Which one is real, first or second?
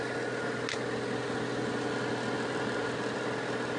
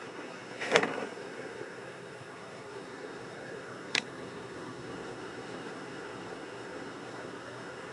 first